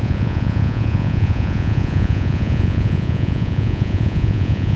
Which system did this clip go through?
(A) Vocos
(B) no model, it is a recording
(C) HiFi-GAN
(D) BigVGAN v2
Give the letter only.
A